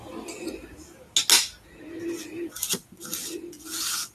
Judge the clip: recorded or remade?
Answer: recorded